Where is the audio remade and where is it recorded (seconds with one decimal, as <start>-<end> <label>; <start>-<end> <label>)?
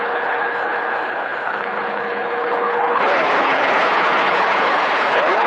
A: 0.0-5.5 remade